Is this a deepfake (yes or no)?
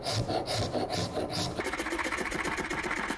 no